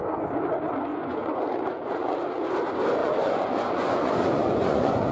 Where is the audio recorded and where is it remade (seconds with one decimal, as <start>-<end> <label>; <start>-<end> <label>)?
0.0-0.9 recorded; 0.9-2.2 remade; 2.2-3.0 recorded; 3.0-5.1 remade